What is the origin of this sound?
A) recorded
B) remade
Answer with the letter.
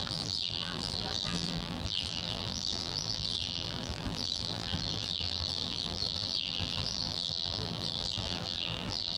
B